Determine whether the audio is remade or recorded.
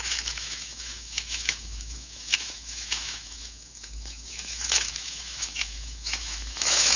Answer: remade